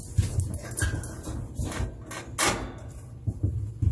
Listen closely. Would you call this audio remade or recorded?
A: recorded